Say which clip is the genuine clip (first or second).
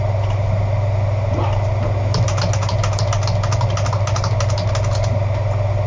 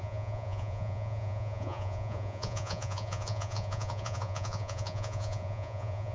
first